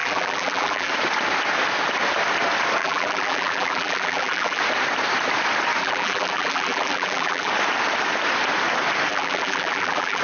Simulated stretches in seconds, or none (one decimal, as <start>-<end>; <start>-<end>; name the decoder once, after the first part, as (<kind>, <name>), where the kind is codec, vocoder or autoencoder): 0.0-0.9 (vocoder, BigVGAN v2); 2.8-4.6; 5.8-7.5; 9.1-10.2